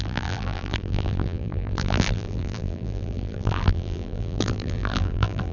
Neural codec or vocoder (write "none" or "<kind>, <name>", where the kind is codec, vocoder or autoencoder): vocoder, BigVGAN v2